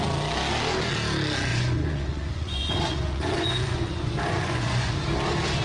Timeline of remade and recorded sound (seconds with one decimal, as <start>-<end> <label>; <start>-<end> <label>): 0.0-1.5 recorded; 1.5-4.9 remade; 4.9-5.6 recorded